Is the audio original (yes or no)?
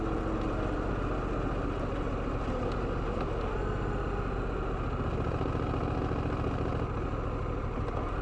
yes